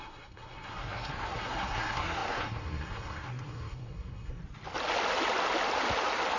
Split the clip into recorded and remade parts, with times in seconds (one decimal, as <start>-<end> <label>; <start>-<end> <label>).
0.0-4.4 remade; 4.4-6.4 recorded

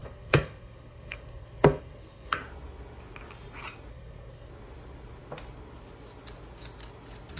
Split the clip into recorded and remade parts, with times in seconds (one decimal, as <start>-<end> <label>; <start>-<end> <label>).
0.0-2.4 remade; 2.4-3.9 recorded; 3.9-4.5 remade; 4.5-7.4 recorded

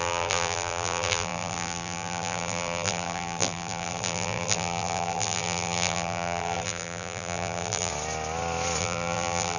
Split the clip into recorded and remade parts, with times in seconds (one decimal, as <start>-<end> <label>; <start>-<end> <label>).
0.0-7.9 remade; 7.9-8.8 recorded; 8.8-9.6 remade

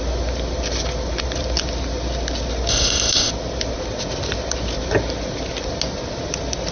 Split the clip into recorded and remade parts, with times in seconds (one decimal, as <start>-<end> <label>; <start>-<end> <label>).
0.0-2.7 recorded; 2.7-3.3 remade; 3.3-6.7 recorded

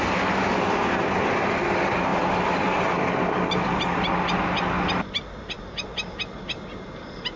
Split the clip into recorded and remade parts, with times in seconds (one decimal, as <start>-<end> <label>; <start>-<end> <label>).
0.0-7.4 recorded

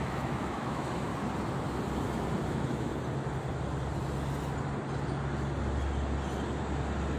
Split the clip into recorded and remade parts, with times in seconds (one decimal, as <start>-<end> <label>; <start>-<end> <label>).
0.0-1.1 remade; 1.1-2.5 recorded; 2.5-2.9 remade; 2.9-7.2 recorded